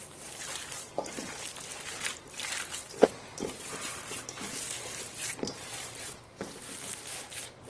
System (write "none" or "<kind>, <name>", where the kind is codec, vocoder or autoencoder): vocoder, BigVGAN v2